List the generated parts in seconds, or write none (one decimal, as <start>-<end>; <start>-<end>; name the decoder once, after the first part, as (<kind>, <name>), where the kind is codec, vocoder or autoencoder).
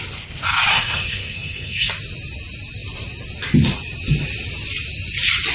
0.7-1.9 (codec, SNAC)